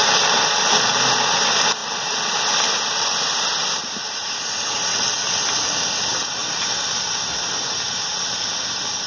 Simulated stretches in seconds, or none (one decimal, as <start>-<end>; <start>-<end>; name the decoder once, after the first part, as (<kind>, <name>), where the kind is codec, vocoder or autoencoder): none